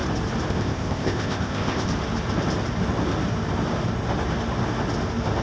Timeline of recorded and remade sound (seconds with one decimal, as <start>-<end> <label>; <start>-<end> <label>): 0.0-0.5 recorded; 0.5-1.9 remade; 1.9-5.4 recorded